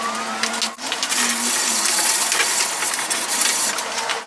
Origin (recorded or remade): recorded